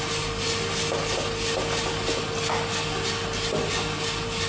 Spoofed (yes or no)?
no